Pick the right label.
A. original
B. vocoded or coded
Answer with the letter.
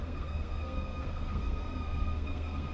B